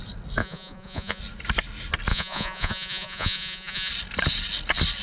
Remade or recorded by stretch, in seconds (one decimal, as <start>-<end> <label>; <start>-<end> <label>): 0.0-0.4 recorded; 0.4-1.2 remade; 1.2-2.1 recorded; 2.1-3.9 remade; 3.9-5.0 recorded